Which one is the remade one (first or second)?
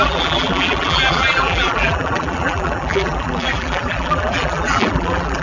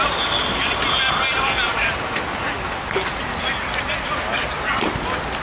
first